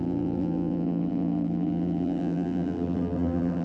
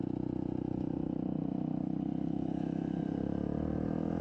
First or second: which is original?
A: second